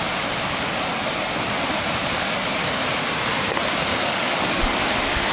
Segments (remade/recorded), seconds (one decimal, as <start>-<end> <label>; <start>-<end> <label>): 0.0-2.0 recorded; 2.0-2.6 remade; 2.6-3.9 recorded; 3.9-4.8 remade; 4.8-5.3 recorded